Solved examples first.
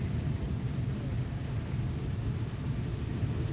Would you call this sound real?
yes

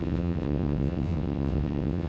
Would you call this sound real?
no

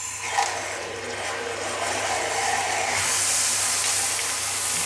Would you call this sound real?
yes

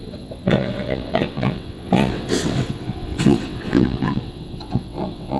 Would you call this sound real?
no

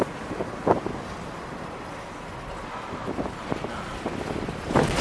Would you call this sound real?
yes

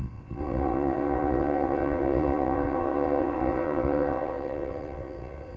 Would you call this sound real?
no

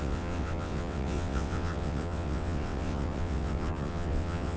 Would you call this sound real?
no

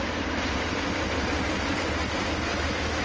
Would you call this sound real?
yes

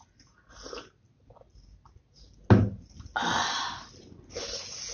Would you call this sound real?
yes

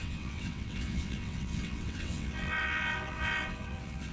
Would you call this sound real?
no